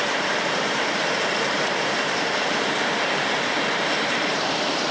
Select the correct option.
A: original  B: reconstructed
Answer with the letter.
B